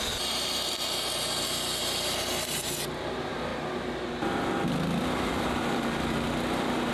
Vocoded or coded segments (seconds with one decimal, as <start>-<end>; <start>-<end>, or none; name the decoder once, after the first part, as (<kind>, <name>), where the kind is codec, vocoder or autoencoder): 0.0-3.5 (vocoder, BigVGAN v2); 5.0-6.9